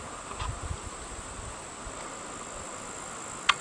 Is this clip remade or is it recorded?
recorded